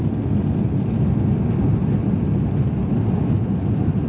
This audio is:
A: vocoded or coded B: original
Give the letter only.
B